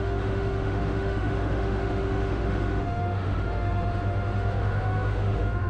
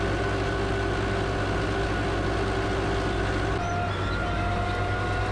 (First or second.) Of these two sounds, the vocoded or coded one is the first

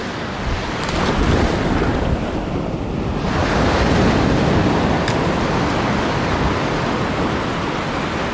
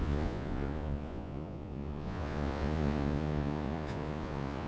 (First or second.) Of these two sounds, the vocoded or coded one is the second